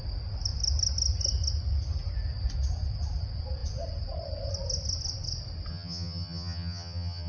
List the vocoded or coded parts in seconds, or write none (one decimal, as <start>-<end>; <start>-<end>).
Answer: 5.7-7.3